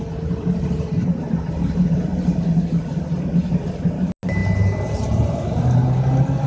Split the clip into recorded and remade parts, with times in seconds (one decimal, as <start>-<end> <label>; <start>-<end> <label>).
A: 0.0-6.5 recorded